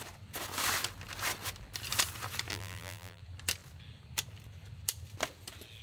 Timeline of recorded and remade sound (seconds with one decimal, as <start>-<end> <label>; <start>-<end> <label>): 0.0-2.5 recorded; 2.5-3.2 remade; 3.2-5.8 recorded